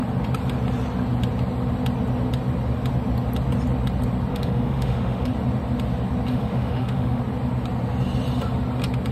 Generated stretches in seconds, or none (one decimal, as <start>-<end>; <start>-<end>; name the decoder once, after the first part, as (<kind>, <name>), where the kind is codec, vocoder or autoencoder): 4.3-5.3 (autoencoder, DAC-VAE); 6.3-7.2